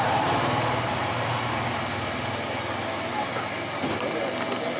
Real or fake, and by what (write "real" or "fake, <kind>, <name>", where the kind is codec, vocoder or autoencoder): real